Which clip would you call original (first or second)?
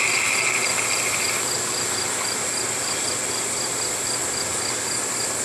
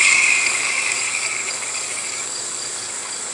first